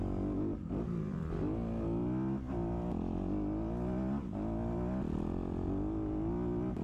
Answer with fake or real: real